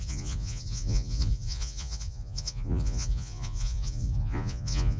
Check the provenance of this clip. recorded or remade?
remade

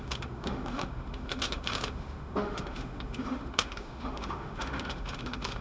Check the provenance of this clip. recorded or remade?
remade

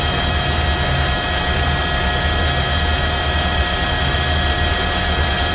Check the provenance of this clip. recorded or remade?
recorded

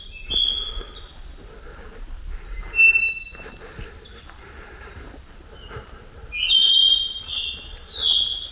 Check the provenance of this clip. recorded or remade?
recorded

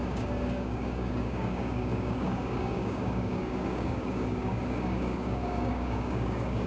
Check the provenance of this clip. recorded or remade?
remade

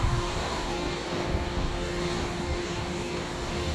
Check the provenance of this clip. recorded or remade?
remade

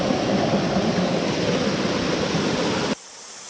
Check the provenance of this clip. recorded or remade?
recorded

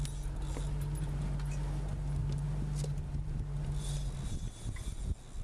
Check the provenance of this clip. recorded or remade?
recorded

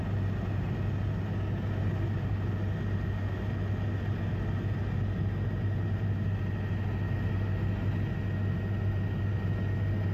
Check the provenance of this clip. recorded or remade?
recorded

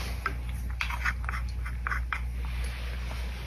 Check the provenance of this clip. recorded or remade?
recorded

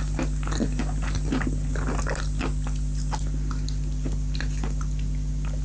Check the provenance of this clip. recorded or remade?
recorded